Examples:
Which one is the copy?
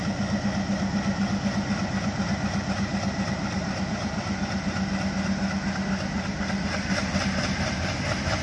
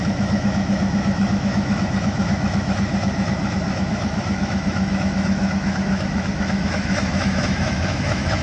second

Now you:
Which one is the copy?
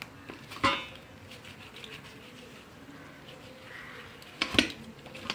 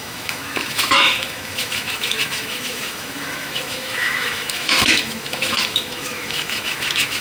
second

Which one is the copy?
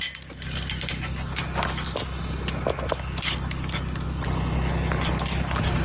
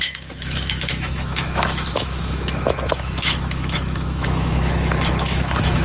second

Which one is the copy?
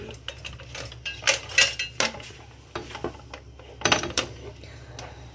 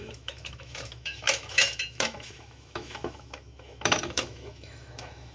second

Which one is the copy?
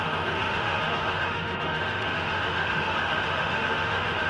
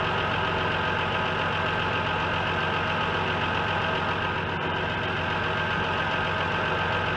first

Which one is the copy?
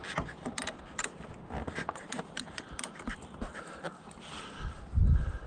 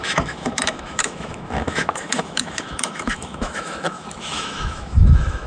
second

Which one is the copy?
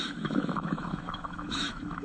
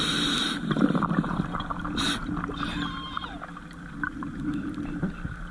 first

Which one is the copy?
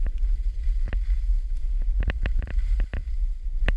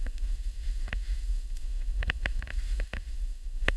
second